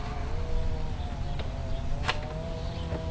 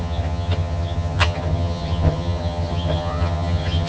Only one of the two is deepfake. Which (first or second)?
second